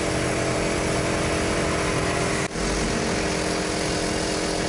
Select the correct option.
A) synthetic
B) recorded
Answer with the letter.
B